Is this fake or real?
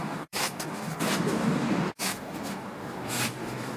fake